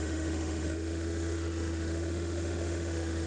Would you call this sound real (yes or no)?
no